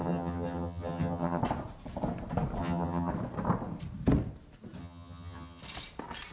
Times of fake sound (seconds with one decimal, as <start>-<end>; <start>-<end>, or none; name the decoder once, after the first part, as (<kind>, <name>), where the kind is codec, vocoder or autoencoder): 0.0-1.4 (vocoder, HiFi-GAN); 2.6-3.1; 4.8-5.6